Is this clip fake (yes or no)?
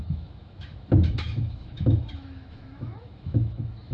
yes